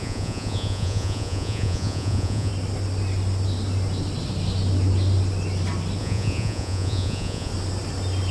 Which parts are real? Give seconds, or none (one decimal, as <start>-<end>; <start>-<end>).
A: 2.5-6.0; 7.5-8.3